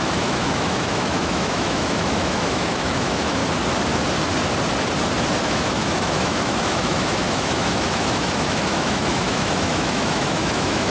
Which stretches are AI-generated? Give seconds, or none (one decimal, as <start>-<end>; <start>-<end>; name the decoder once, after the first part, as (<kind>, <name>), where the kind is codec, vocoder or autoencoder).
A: 0.0-3.4 (autoencoder, DAC-VAE); 5.4-10.9